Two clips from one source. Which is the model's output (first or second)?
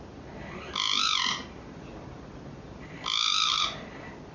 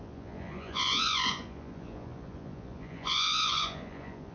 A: second